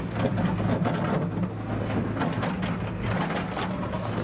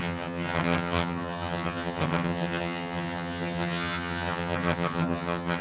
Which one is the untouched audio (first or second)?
first